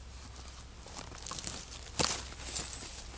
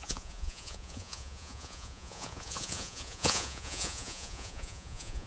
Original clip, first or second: first